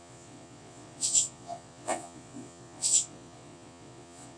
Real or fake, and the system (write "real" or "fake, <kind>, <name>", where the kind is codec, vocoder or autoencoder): fake, vocoder, Vocos